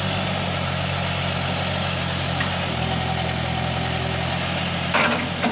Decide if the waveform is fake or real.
real